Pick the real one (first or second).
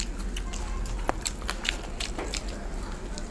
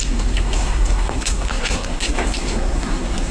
first